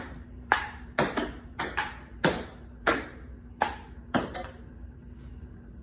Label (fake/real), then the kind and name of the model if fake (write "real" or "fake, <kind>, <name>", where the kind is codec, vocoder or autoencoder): fake, vocoder, BigVGAN v2